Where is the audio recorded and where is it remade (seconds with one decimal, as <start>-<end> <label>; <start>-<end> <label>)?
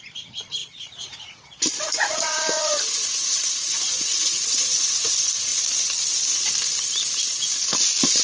0.0-0.6 recorded; 0.6-5.1 remade; 5.1-8.2 recorded